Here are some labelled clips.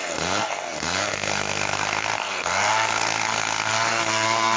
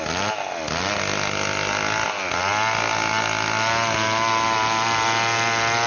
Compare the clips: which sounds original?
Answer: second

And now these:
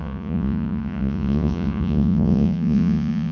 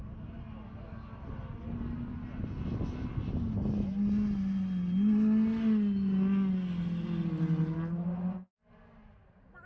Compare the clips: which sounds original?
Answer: second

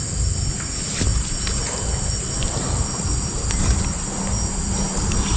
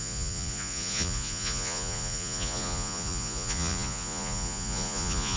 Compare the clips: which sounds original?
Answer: first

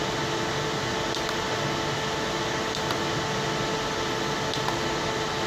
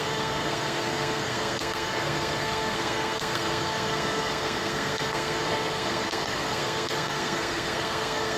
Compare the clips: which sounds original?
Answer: first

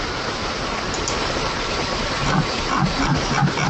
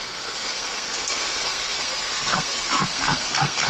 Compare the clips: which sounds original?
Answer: first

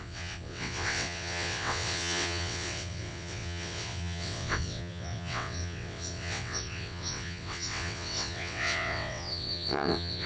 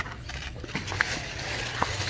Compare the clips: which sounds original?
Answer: second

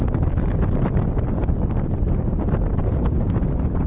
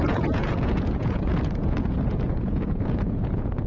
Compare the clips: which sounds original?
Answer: first